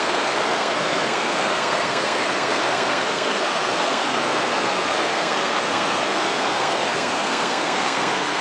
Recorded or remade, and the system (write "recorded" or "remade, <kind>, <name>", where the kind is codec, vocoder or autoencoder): remade, codec, SNAC